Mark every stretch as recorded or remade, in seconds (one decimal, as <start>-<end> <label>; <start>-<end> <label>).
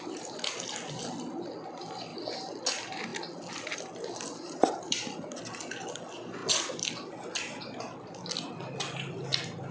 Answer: 0.0-9.7 recorded